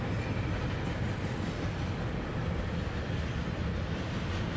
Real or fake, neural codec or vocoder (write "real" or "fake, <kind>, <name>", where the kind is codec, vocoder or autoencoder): real